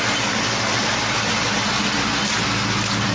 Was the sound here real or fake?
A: real